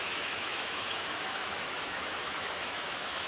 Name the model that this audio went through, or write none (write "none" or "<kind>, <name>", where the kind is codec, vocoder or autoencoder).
autoencoder, DAC-VAE